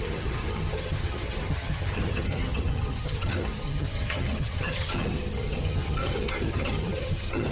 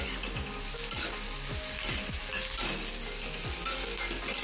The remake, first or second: first